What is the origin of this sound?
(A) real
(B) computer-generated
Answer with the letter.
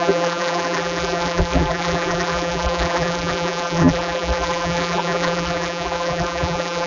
B